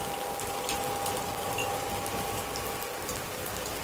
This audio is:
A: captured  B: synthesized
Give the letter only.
A